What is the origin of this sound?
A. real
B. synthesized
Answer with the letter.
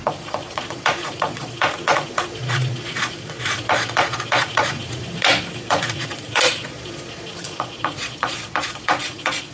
B